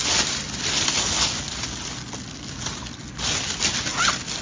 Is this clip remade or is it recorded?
recorded